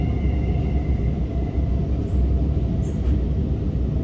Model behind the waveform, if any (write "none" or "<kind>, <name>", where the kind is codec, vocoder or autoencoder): none